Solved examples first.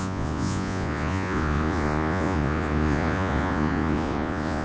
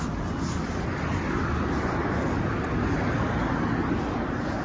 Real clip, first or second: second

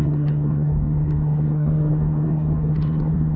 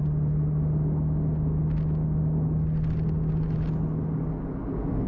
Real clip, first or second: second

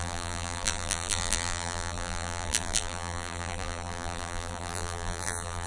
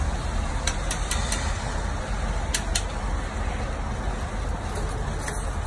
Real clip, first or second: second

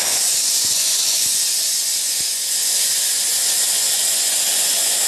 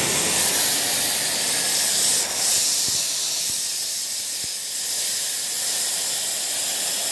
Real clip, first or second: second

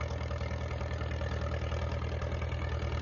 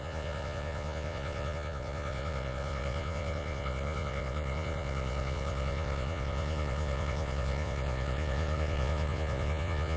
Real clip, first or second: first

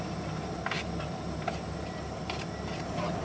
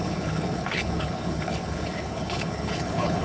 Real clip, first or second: first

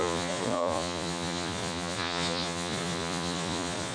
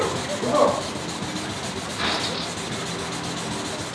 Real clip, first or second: second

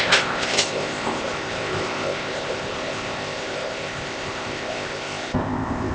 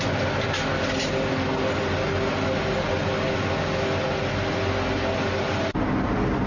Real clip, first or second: second